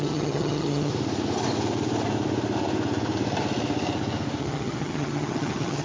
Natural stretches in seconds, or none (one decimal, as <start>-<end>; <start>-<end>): 0.9-4.4